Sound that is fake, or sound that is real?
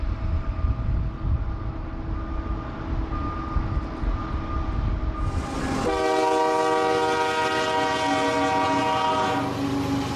real